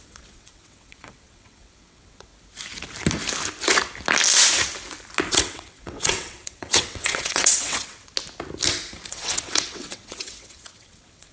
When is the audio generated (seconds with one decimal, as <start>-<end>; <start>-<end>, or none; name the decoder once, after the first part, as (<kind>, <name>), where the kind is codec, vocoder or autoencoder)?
0.0-2.3 (vocoder, WaveNeXt); 5.3-8.1; 9.1-11.3